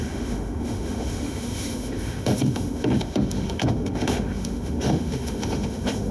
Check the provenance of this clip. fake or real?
fake